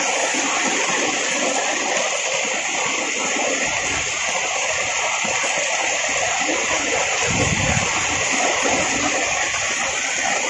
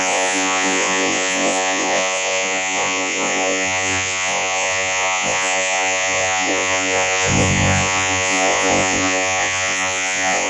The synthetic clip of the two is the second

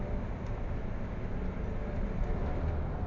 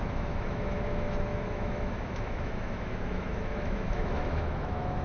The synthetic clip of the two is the second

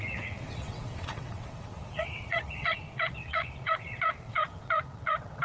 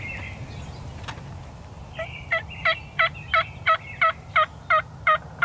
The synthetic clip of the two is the first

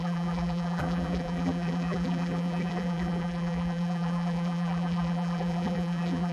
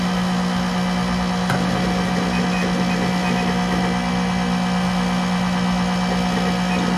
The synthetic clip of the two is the first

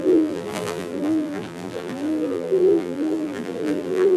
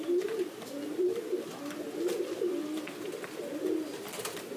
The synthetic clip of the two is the first